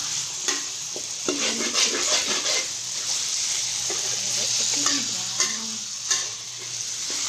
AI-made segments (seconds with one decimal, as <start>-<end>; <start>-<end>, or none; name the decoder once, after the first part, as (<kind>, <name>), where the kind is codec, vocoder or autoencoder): 0.0-4.4 (vocoder, BigVGAN v2); 6.3-7.3